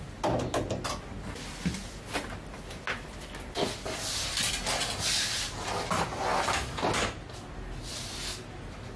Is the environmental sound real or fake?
real